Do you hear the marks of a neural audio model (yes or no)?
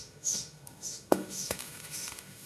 yes